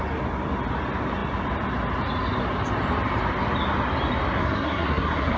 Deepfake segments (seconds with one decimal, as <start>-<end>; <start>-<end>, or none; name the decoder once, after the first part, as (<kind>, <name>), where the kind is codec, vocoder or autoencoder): 4.4-5.4 (codec, SNAC)